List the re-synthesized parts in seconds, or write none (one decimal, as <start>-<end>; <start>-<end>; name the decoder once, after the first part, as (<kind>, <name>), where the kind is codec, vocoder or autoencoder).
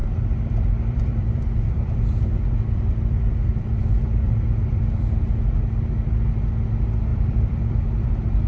0.0-5.1 (vocoder, BigVGAN v2); 7.1-8.1